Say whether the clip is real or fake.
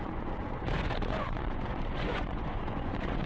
fake